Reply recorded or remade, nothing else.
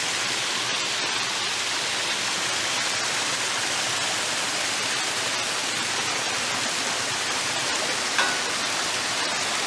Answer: recorded